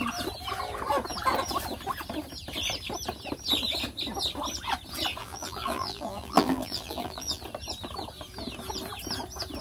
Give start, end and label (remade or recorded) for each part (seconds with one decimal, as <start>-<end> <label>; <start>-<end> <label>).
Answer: 0.0-5.2 recorded; 5.2-7.4 remade; 7.4-9.6 recorded